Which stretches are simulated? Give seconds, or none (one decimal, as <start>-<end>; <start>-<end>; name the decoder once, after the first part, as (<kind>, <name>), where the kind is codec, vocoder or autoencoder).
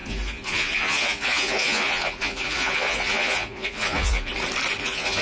0.0-4.3 (vocoder, Vocos); 4.8-5.2